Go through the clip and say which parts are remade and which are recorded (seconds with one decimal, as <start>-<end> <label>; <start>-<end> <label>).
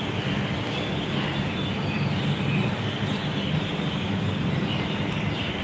0.0-5.6 recorded